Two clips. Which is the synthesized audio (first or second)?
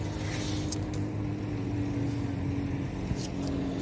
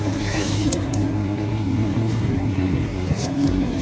second